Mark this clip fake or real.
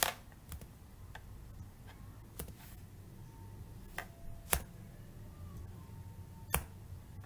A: real